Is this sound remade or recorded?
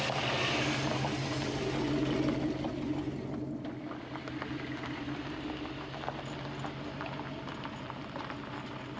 recorded